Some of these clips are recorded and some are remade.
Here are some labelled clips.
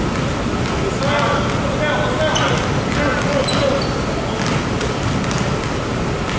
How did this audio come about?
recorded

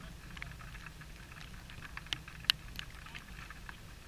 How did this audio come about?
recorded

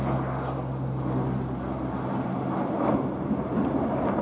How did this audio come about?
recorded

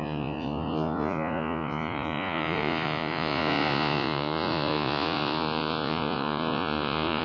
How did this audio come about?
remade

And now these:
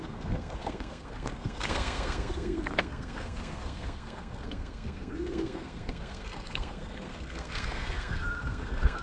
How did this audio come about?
remade